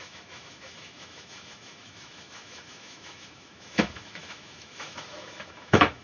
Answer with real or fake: fake